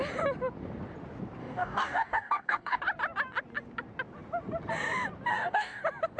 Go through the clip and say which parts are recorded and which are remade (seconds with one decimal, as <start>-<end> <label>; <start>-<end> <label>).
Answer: 0.0-1.4 recorded; 1.4-2.8 remade; 2.8-5.3 recorded; 5.3-5.8 remade; 5.8-6.2 recorded